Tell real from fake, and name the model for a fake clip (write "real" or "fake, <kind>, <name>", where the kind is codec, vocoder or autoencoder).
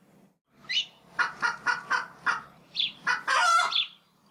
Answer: real